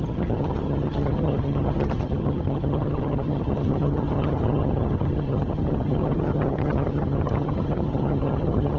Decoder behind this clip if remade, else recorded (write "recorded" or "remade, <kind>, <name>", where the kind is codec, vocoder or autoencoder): remade, vocoder, HiFi-GAN